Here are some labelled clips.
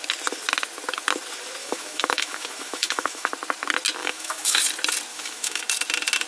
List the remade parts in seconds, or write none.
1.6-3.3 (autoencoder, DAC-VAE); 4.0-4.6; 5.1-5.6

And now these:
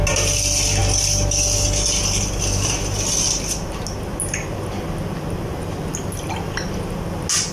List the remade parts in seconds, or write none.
none

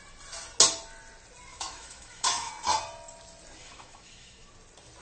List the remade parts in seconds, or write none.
1.5-2.5 (autoencoder, DAC-VAE); 3.6-4.5

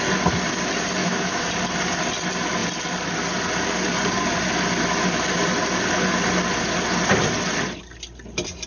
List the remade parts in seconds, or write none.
1.0-1.5 (autoencoder, DAC-VAE)

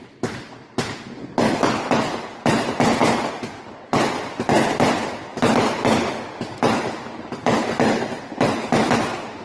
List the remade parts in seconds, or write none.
none